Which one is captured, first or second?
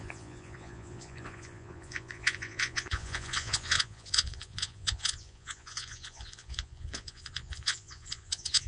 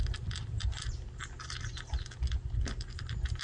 second